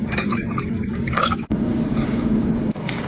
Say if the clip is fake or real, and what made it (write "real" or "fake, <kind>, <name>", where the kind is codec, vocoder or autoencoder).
fake, codec, DAC